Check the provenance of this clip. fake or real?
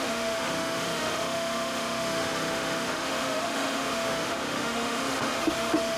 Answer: fake